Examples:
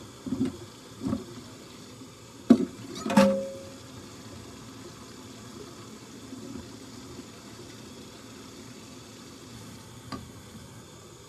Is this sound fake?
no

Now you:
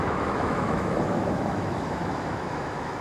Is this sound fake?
yes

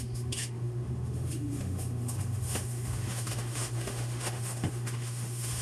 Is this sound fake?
yes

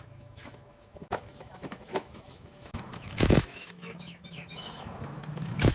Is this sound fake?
yes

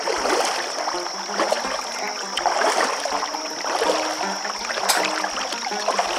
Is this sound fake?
no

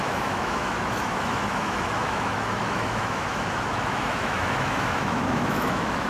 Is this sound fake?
yes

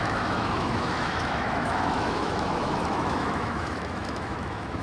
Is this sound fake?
yes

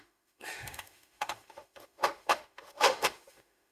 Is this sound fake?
yes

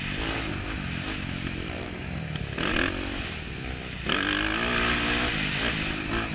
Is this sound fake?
no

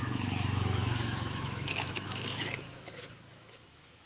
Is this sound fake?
yes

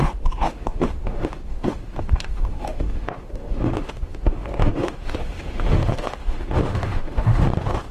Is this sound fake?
yes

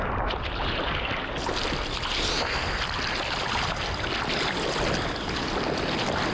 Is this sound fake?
no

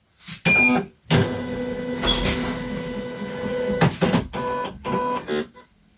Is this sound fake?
no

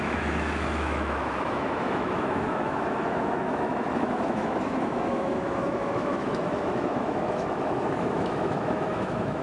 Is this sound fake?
yes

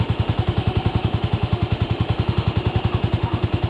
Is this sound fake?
yes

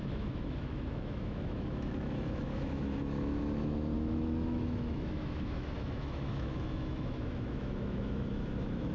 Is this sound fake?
yes